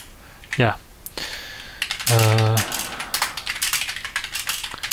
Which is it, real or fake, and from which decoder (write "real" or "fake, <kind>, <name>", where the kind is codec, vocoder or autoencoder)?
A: real